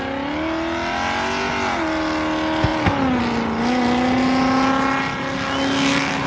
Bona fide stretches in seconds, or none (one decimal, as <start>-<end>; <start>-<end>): 0.0-6.3